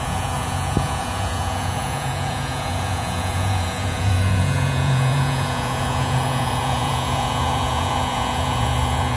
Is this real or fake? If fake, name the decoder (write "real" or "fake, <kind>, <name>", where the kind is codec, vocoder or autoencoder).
fake, vocoder, Vocos